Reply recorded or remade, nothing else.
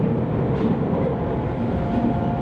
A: recorded